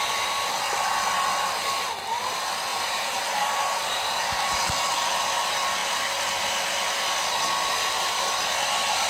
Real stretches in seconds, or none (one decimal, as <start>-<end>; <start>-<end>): 0.0-2.7; 4.7-9.1